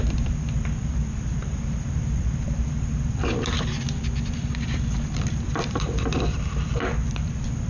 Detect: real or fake fake